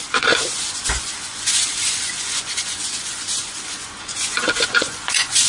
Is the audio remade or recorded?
remade